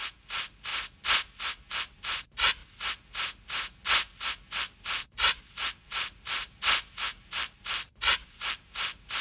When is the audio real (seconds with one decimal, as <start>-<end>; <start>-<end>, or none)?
0.7-1.7; 2.6-4.5